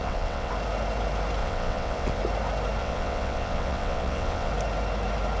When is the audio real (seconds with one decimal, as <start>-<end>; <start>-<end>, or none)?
0.5-1.4; 2.2-2.8; 4.5-5.4

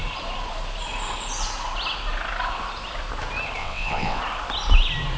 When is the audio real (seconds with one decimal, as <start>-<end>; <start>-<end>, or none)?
0.0-3.6; 4.2-5.2

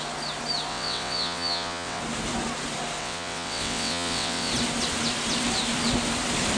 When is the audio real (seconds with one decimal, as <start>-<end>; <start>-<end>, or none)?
0.0-0.7; 2.0-3.0; 4.5-6.6

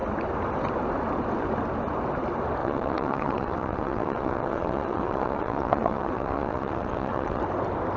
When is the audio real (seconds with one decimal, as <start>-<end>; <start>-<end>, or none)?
0.0-2.6; 7.4-8.0